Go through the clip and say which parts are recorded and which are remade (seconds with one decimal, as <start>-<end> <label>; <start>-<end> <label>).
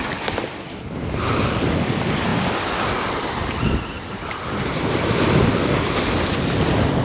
0.0-7.0 recorded